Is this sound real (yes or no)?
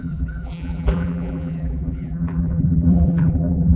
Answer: no